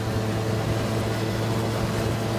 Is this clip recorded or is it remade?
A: recorded